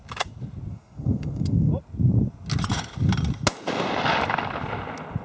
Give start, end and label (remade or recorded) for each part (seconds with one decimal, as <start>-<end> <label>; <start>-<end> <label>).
0.0-0.7 recorded; 0.7-1.7 remade; 1.7-5.2 recorded